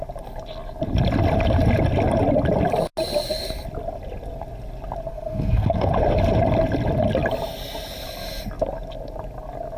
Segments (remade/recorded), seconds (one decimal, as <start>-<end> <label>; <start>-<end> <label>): 0.0-5.1 recorded; 5.1-5.9 remade; 5.9-9.8 recorded